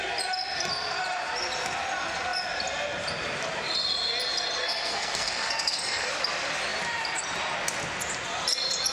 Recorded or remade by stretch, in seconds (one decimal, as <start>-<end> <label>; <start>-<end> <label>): 0.0-4.6 recorded; 4.6-6.1 remade; 6.1-8.9 recorded